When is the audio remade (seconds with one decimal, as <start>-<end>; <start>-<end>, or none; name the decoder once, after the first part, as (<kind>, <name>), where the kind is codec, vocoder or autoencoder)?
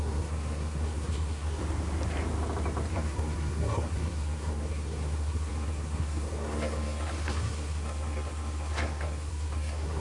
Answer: 0.0-1.6 (codec, SNAC); 2.9-10.0